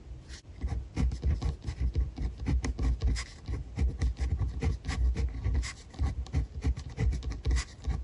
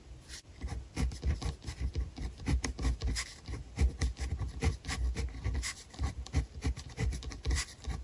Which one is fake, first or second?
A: second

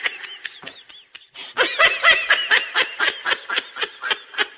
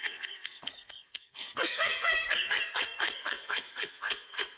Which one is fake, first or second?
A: second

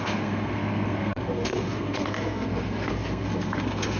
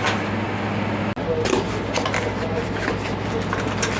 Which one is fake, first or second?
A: first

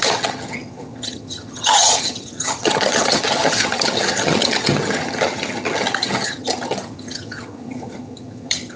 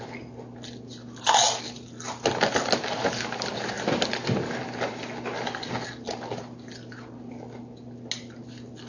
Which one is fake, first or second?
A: first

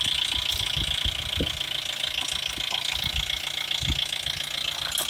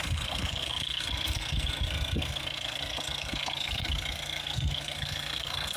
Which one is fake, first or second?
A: second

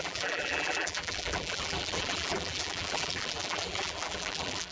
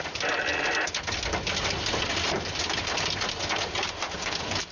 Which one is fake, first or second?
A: first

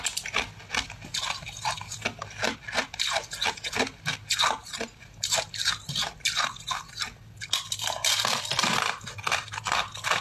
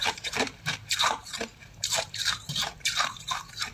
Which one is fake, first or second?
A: second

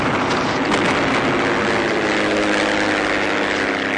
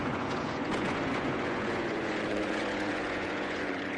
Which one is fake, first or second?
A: second